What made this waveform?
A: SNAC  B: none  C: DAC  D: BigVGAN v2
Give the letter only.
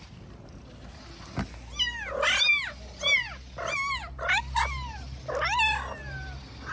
B